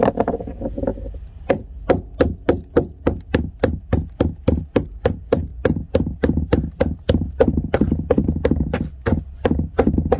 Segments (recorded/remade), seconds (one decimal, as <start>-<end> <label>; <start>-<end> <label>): 0.0-10.2 recorded